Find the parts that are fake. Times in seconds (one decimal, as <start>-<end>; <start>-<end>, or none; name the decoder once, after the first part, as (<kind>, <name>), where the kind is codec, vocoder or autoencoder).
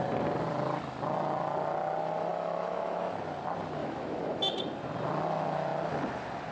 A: 2.3-3.0 (autoencoder, DAC-VAE); 3.8-4.4